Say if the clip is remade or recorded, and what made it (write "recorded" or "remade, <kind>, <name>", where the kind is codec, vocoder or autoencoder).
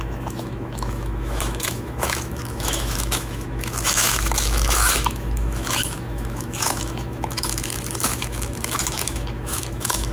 remade, autoencoder, DAC-VAE